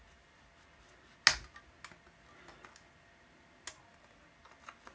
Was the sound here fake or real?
real